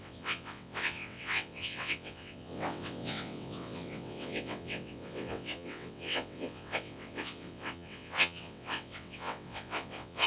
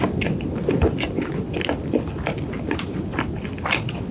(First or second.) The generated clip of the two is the first